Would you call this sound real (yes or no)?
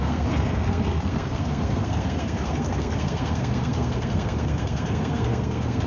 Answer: no